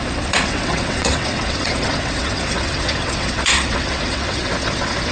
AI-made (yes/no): yes